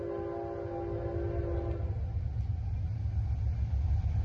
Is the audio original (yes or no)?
yes